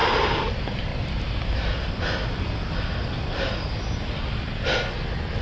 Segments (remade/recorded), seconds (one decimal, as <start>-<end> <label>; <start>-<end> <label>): 0.0-5.4 recorded